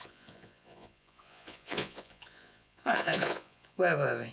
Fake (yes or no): yes